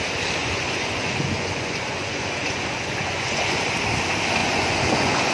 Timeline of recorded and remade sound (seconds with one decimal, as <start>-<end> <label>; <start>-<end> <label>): 0.0-0.4 recorded; 0.4-3.6 remade; 3.6-4.4 recorded; 4.4-5.3 remade